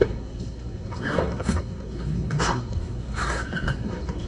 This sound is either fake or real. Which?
fake